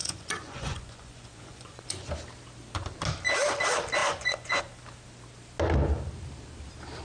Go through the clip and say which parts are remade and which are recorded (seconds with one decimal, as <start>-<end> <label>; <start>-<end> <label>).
0.0-2.1 remade; 2.1-4.0 recorded; 4.0-4.6 remade; 4.6-7.0 recorded